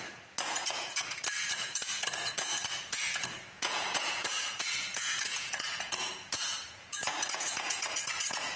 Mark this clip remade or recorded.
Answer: remade